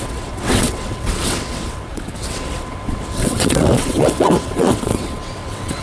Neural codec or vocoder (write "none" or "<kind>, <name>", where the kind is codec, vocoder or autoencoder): vocoder, WaveNeXt